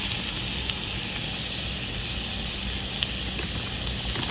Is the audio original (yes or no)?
yes